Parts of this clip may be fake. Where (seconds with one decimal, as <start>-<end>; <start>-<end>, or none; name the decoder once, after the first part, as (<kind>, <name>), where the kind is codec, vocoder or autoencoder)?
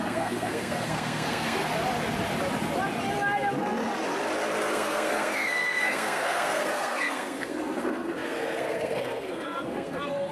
0.0-1.6 (codec, SNAC); 4.7-10.3